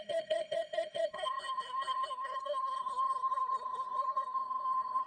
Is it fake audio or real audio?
fake